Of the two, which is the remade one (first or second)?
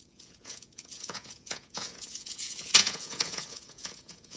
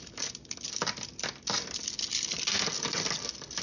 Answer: first